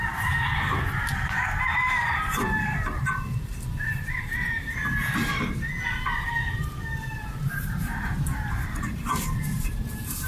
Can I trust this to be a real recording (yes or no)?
no